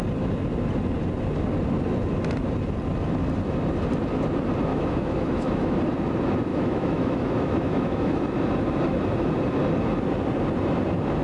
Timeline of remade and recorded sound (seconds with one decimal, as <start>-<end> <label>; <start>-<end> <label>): 0.0-4.7 recorded; 4.7-5.8 remade; 5.8-6.5 recorded; 6.5-8.2 remade; 8.2-11.2 recorded